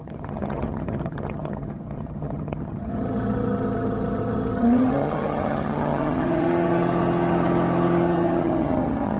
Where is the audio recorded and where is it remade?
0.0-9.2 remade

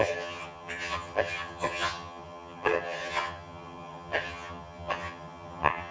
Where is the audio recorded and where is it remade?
0.0-5.9 remade

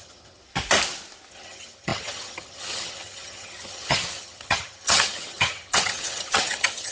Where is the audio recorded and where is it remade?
0.0-0.4 remade; 0.4-1.3 recorded; 1.3-6.9 remade

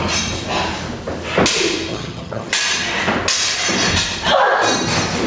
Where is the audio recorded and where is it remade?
0.0-1.9 recorded; 1.9-2.5 remade; 2.5-5.3 recorded

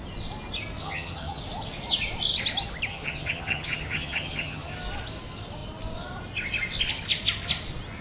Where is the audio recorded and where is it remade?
0.0-0.8 recorded; 0.8-1.4 remade; 1.4-2.9 recorded; 2.9-4.7 remade; 4.7-8.0 recorded

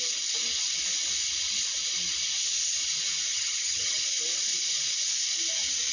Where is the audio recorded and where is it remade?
0.0-3.3 recorded; 3.3-4.0 remade; 4.0-5.9 recorded

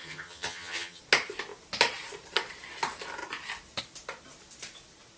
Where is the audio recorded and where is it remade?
0.0-1.0 remade; 1.0-5.2 recorded